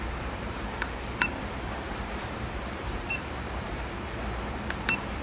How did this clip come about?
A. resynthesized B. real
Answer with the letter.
A